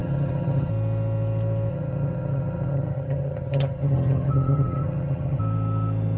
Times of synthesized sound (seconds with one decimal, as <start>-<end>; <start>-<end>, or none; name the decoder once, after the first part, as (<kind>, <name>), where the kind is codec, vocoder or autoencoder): 0.0-0.7 (vocoder, HiFi-GAN); 1.7-5.4